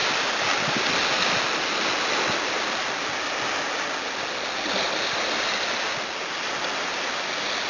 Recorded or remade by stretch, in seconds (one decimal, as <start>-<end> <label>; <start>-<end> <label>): 0.0-7.7 recorded